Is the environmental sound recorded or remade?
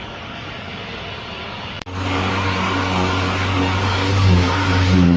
remade